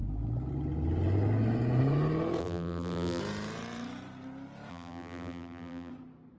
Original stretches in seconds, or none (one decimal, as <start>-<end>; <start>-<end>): 0.0-2.4; 3.2-4.7; 5.9-6.4

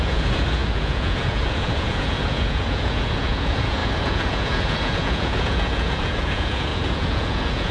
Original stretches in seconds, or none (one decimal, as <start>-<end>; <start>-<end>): none

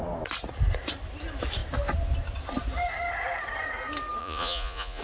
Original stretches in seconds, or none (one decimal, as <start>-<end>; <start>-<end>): 0.0-4.2

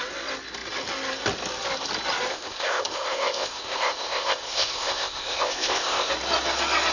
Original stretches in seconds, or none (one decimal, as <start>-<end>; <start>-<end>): 0.0-2.3; 6.1-6.9

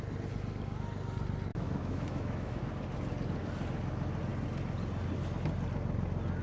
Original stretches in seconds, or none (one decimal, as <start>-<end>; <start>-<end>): 0.0-1.5; 2.6-6.4

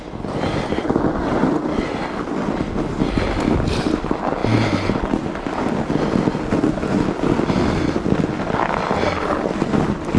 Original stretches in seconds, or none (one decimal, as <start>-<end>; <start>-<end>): 0.0-10.2